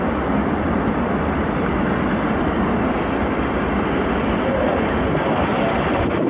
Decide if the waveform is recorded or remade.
recorded